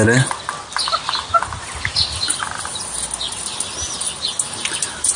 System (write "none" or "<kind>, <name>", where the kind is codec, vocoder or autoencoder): none